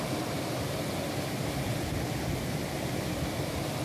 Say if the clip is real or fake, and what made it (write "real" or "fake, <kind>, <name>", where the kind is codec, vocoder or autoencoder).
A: real